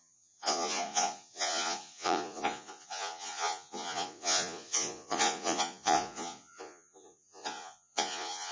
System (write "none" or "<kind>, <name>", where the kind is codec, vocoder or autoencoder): vocoder, Vocos